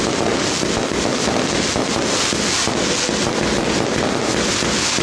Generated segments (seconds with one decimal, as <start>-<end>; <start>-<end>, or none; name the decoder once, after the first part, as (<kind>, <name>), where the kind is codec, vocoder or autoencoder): none